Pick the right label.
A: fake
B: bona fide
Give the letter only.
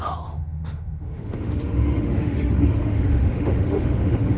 A